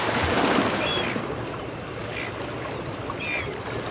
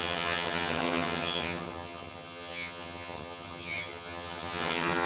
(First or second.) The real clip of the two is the first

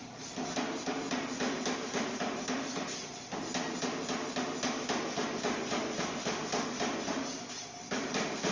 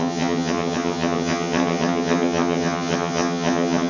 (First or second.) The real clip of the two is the first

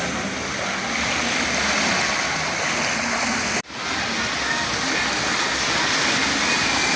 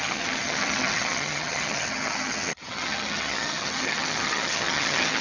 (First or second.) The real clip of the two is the first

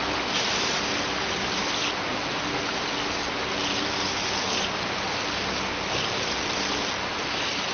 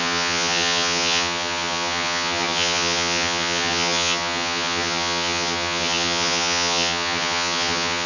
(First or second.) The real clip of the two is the first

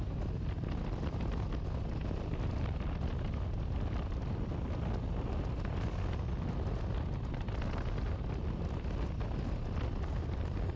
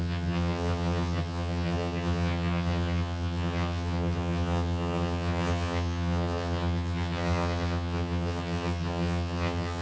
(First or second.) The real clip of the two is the first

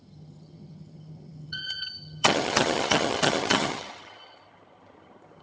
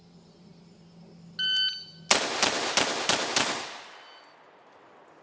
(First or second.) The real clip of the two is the second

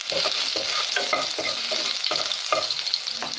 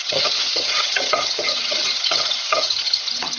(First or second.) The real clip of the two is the first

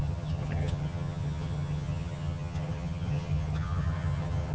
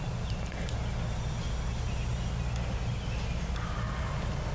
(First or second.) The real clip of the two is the second